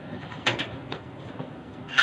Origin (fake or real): fake